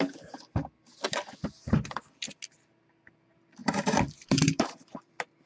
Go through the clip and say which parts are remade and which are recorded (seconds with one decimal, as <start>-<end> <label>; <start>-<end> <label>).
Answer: 0.0-3.6 recorded; 3.6-5.1 remade; 5.1-5.5 recorded